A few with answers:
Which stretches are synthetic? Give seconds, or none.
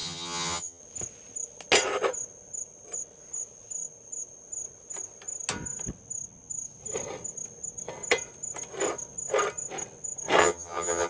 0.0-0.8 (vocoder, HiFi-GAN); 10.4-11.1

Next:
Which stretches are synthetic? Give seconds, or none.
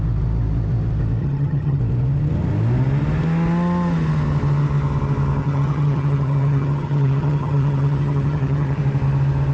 1.2-1.8 (vocoder, HiFi-GAN); 5.4-8.8